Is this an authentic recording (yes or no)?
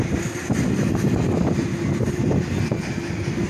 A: yes